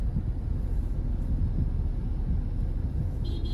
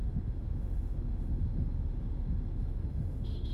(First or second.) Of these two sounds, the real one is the first